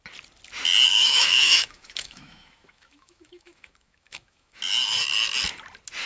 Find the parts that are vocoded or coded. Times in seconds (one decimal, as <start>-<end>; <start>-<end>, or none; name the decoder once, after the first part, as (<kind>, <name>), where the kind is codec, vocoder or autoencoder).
0.9-4.6 (autoencoder, DAC-VAE)